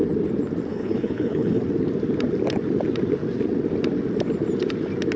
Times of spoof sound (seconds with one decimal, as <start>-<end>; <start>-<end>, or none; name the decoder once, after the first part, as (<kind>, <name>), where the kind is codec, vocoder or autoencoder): 0.7-1.6 (codec, HILCodec)